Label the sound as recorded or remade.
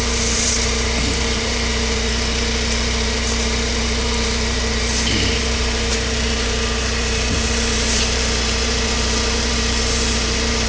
remade